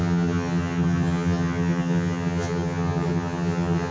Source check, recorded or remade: remade